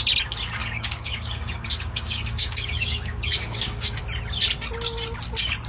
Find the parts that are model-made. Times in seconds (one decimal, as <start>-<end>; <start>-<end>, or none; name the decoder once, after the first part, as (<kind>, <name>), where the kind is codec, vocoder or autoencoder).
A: 0.6-4.0 (codec, DAC)